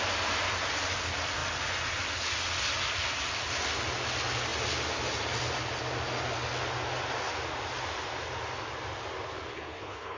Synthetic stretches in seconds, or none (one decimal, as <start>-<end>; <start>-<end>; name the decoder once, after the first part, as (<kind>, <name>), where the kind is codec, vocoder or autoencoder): 9.5-10.2 (codec, HILCodec)